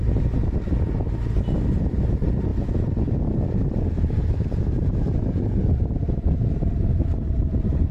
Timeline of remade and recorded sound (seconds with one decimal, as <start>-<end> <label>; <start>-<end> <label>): 0.0-7.9 recorded